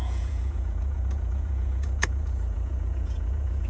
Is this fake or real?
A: fake